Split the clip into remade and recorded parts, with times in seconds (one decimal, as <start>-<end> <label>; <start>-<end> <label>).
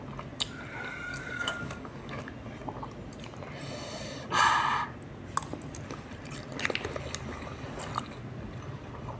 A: 0.0-1.1 recorded; 1.1-2.3 remade; 2.3-9.2 recorded